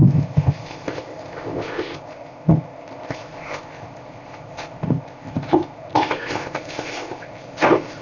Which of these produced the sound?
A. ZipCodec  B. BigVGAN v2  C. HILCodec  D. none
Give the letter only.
A